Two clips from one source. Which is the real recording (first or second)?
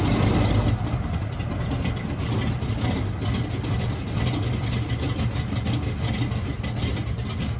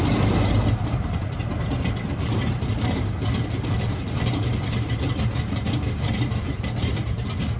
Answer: first